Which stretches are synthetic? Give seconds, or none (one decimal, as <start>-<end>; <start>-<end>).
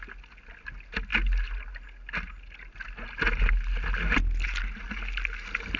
none